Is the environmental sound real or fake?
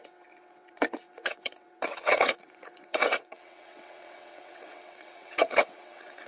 fake